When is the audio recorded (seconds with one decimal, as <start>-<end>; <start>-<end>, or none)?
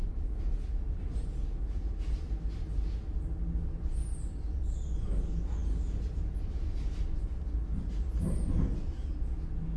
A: 0.0-9.8